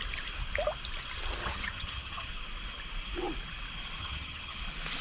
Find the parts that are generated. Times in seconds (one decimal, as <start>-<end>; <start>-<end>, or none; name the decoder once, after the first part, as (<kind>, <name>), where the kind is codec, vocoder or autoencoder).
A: 1.4-2.3 (vocoder, HiFi-GAN); 4.0-4.6